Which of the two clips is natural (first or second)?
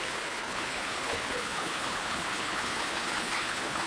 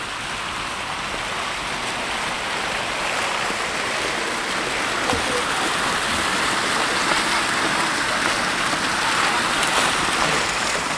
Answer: second